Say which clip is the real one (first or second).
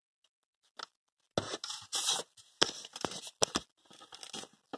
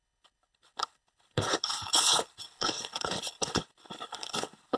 first